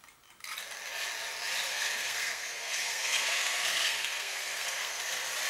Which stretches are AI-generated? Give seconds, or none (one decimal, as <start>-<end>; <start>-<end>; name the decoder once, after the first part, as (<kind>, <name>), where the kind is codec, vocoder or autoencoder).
1.7-5.0 (codec, SNAC)